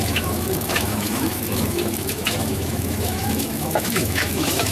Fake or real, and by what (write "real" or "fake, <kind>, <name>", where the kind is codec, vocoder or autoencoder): fake, autoencoder, DAC-VAE